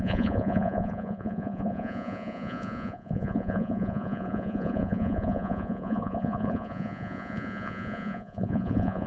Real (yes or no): no